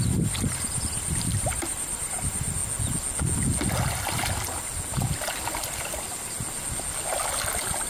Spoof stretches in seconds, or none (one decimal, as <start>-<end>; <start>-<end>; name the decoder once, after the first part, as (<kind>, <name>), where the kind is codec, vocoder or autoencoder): 0.0-2.6 (vocoder, BigVGAN v2); 7.3-7.9